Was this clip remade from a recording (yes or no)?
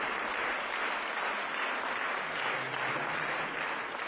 no